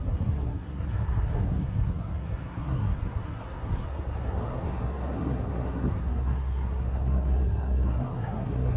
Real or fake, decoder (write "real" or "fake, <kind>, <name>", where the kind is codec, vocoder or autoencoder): fake, codec, SNAC